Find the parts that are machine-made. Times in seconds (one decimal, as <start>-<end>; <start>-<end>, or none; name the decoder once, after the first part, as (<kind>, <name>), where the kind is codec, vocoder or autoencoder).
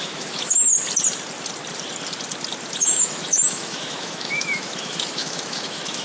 0.0-0.7 (autoencoder, DAC-VAE); 2.8-6.0